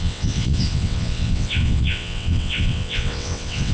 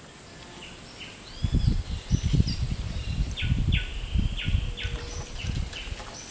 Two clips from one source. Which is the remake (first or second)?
first